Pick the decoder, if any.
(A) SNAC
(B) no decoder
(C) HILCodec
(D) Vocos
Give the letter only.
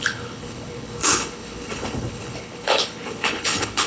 C